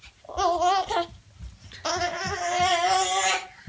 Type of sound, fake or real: real